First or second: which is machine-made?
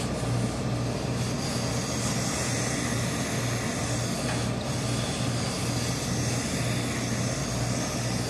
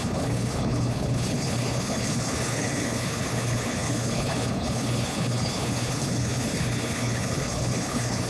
second